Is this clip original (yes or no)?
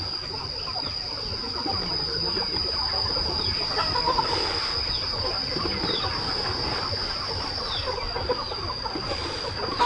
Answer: yes